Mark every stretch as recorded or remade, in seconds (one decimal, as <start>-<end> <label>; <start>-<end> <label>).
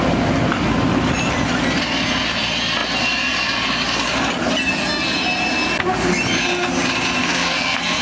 0.0-7.2 recorded; 7.2-8.0 remade